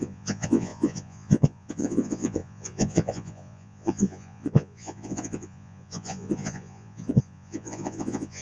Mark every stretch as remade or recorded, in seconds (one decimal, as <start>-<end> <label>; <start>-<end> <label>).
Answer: 0.0-8.4 remade